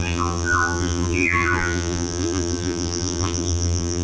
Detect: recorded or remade remade